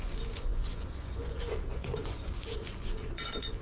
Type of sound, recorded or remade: remade